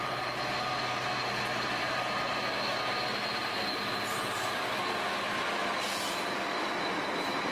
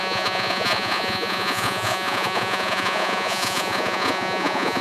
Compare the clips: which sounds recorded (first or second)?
first